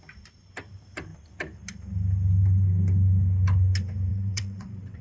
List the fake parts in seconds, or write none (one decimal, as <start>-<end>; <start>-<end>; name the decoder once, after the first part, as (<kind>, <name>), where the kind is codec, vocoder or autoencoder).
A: 4.1-5.0 (vocoder, WaveNeXt)